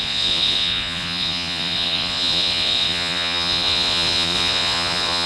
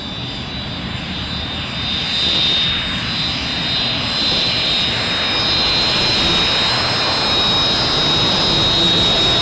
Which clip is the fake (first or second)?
first